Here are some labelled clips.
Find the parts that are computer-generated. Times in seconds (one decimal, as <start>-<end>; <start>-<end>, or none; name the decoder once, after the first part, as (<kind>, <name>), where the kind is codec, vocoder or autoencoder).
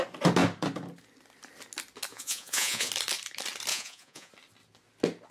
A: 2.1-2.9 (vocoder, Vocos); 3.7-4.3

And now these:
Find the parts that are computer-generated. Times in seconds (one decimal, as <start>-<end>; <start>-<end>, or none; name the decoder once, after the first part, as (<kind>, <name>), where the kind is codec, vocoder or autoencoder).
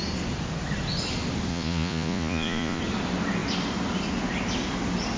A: 1.5-2.8 (vocoder, Vocos)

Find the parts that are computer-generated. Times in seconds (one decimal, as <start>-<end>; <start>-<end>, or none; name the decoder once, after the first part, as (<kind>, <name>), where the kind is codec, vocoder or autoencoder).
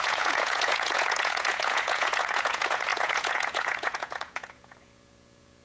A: 0.0-5.6 (vocoder, Vocos)